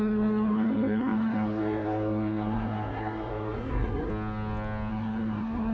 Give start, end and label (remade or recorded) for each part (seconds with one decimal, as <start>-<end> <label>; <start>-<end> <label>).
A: 0.0-4.1 remade; 4.1-4.9 recorded; 4.9-5.7 remade